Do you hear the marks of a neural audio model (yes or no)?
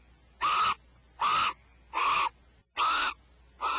no